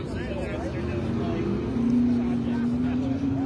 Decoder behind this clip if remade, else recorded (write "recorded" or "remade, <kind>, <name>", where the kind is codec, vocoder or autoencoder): recorded